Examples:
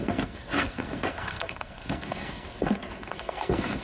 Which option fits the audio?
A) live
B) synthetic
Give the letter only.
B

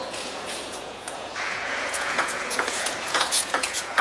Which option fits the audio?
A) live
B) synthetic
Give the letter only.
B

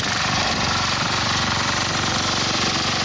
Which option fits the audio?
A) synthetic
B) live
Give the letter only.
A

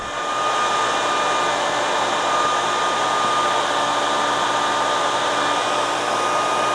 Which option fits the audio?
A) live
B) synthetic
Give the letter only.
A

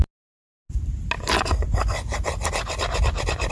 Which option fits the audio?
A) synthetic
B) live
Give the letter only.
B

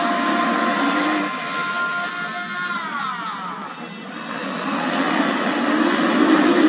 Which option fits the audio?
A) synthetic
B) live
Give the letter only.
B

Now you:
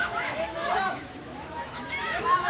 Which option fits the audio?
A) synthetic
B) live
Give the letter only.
A